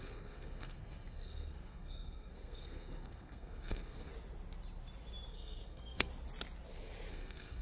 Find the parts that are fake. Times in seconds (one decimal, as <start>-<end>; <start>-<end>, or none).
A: 0.0-4.1; 5.3-6.1; 7.1-7.6